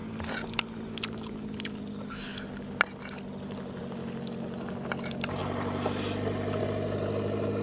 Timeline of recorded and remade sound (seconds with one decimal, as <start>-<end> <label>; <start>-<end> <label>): 0.0-7.6 recorded